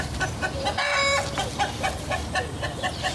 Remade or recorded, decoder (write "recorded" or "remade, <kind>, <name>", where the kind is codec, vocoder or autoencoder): recorded